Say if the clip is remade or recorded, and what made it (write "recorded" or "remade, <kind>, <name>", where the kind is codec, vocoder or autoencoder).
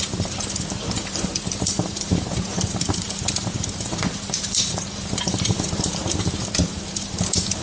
remade, vocoder, BigVGAN v2